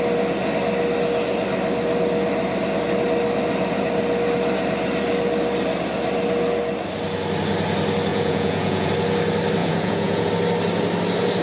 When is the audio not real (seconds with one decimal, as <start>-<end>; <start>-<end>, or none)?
8.1-8.9; 9.6-10.3